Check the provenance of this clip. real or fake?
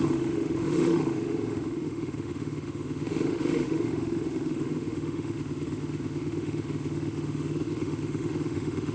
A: fake